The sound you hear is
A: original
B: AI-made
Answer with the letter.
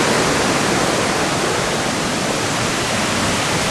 B